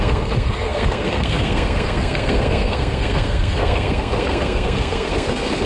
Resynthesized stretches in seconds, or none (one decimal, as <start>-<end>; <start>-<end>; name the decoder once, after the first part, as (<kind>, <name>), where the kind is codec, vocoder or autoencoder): 0.0-5.7 (codec, SNAC)